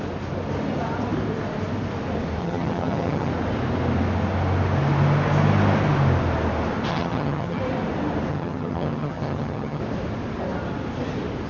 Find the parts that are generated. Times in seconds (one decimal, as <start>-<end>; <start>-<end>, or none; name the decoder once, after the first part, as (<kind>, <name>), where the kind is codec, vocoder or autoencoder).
2.4-3.3 (vocoder, HiFi-GAN); 6.9-7.6; 8.3-9.8